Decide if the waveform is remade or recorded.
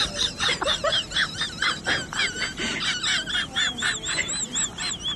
recorded